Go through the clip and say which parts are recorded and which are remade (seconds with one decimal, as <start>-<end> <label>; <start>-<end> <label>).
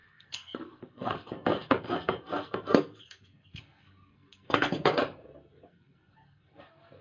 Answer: 0.0-7.0 remade